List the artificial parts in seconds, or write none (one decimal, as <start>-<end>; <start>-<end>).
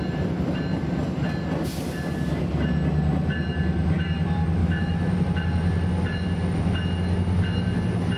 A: 4.6-5.1